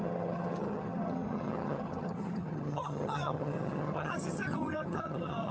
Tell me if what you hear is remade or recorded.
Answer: remade